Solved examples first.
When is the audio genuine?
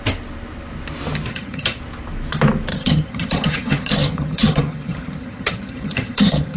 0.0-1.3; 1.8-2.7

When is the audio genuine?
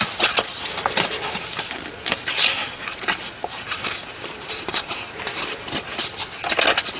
0.0-2.6; 5.4-7.0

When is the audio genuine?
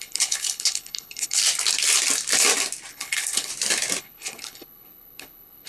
1.4-2.9; 3.5-4.0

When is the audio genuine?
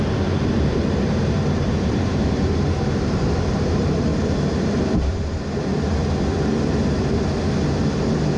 4.1-8.4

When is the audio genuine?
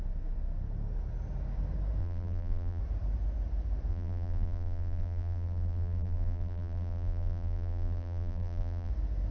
0.0-2.0; 2.8-3.9; 8.9-9.3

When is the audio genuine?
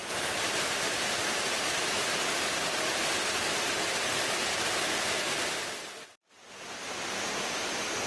1.9-8.1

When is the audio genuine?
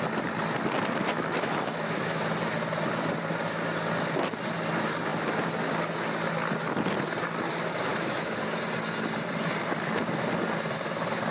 0.0-1.1; 2.2-7.9; 8.6-11.3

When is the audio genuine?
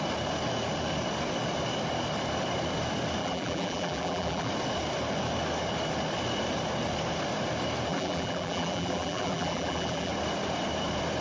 0.0-3.2; 4.5-7.9; 10.1-11.2